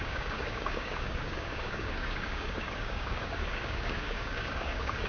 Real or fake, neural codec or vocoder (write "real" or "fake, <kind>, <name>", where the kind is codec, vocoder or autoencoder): fake, codec, DAC